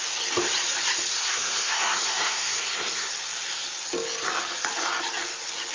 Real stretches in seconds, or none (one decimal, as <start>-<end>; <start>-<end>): 0.0-1.1; 3.1-5.7